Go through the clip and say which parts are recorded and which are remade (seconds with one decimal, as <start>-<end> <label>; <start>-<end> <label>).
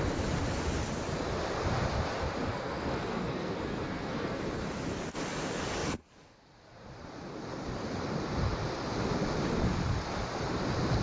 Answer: 0.0-2.5 recorded; 2.5-4.4 remade; 4.4-11.0 recorded